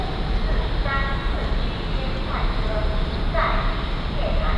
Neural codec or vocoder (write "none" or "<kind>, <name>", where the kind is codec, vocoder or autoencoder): none